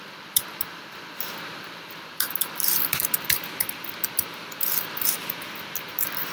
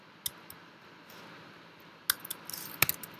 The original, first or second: second